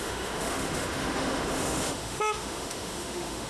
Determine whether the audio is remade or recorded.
remade